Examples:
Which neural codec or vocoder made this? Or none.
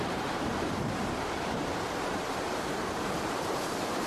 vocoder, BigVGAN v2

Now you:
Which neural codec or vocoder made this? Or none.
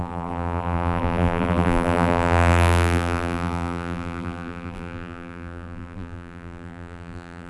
vocoder, BigVGAN v2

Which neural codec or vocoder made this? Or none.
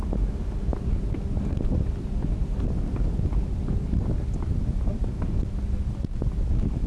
none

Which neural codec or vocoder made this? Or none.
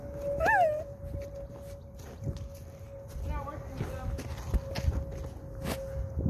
none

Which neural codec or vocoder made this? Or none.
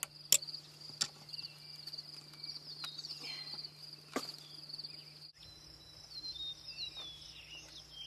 none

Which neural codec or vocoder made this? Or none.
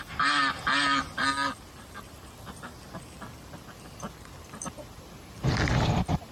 none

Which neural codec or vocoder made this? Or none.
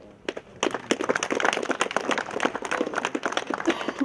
none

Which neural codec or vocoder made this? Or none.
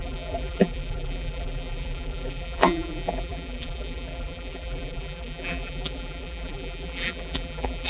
vocoder, BigVGAN v2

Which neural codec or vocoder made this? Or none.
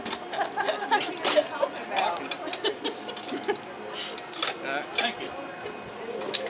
none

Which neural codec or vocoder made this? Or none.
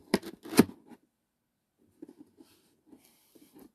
none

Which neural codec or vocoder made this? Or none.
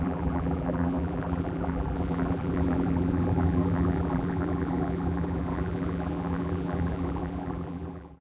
vocoder, BigVGAN v2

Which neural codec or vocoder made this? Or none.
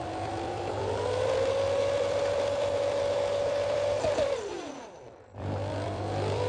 vocoder, BigVGAN v2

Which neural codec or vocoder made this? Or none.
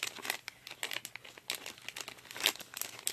none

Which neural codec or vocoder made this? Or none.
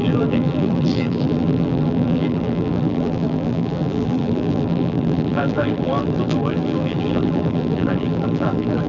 vocoder, BigVGAN v2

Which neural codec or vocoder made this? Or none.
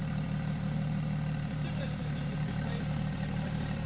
vocoder, BigVGAN v2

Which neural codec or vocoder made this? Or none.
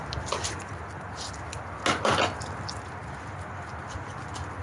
none